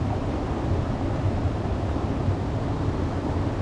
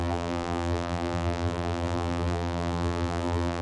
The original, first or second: first